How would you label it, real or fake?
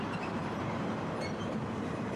fake